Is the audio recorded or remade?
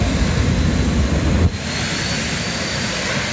recorded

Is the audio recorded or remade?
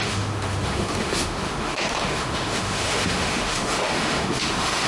remade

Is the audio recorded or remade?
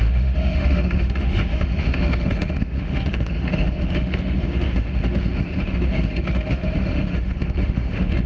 remade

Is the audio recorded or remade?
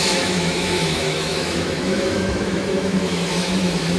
remade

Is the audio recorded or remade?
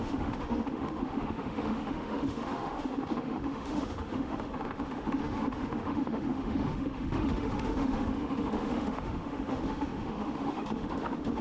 remade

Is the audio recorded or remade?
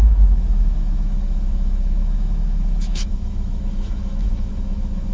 remade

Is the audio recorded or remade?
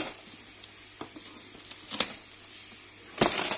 recorded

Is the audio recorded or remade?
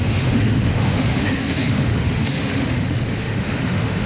remade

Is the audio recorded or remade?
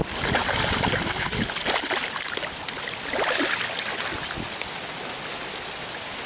recorded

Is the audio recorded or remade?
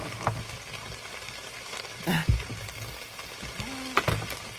recorded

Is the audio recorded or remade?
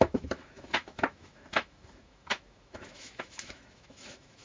remade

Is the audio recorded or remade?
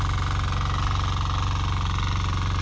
recorded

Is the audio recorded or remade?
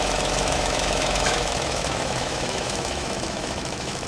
remade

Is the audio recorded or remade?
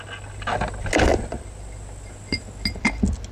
recorded